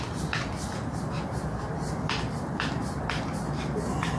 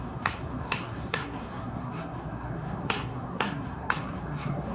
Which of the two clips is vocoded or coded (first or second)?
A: second